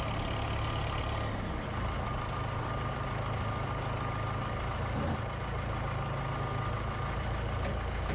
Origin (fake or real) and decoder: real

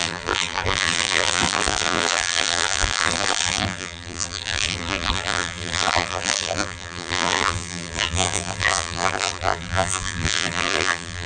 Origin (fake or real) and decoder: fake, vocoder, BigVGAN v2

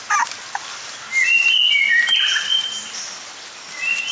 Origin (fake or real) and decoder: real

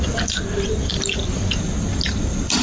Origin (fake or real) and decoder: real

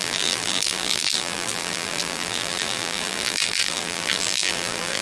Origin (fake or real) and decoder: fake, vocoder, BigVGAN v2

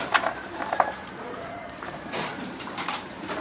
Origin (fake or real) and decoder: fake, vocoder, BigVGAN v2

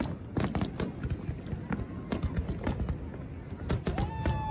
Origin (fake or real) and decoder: real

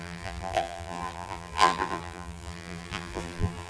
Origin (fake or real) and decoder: fake, vocoder, BigVGAN v2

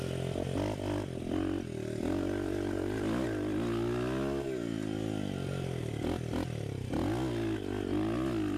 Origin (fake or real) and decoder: real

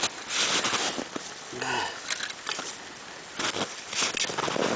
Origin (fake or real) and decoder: real